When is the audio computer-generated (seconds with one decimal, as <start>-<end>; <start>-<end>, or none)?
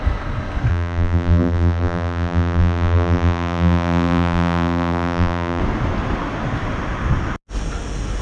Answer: 0.7-5.6